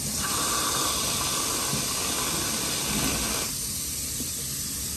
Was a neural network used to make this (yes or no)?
no